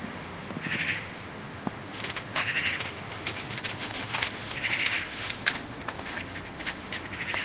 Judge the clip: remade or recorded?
remade